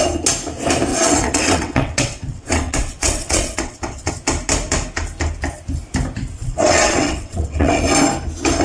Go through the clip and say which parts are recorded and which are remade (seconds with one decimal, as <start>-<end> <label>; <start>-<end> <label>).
0.0-0.9 recorded; 0.9-4.1 remade; 4.1-6.4 recorded; 6.4-7.8 remade; 7.8-8.6 recorded